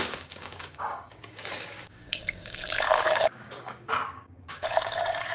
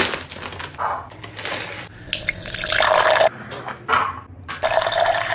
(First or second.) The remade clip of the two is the first